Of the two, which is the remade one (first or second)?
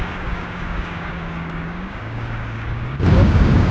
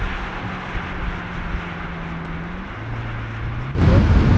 first